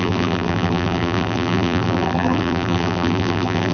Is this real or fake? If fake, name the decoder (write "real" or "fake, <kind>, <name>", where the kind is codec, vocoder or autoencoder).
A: fake, vocoder, BigVGAN v2